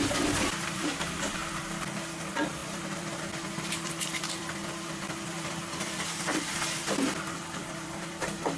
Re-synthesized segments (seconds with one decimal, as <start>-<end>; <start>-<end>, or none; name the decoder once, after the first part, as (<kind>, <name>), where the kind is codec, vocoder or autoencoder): 0.0-1.4 (vocoder, BigVGAN v2); 2.2-8.6